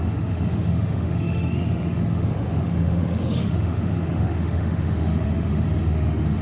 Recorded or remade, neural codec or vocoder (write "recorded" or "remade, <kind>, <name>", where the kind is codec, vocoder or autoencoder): remade, autoencoder, DAC-VAE